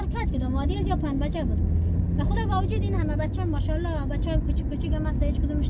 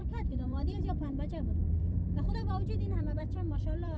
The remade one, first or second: second